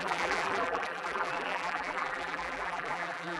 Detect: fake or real fake